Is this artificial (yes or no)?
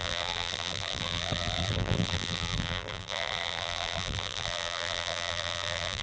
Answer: yes